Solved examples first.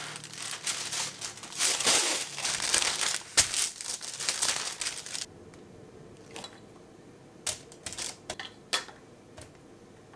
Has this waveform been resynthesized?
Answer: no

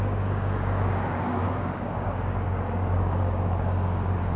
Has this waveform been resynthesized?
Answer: yes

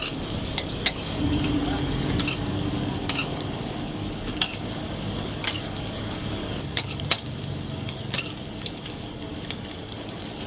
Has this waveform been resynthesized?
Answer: yes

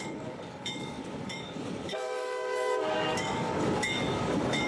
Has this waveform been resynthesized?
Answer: yes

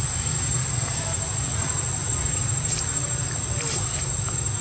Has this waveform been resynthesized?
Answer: no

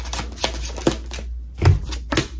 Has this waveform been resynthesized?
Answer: no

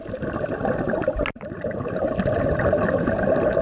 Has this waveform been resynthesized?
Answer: no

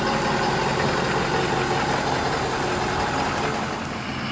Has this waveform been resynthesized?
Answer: no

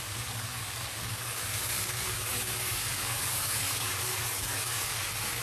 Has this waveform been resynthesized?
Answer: yes